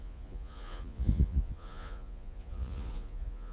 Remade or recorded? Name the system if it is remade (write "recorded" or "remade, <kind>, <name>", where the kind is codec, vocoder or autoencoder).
remade, vocoder, Vocos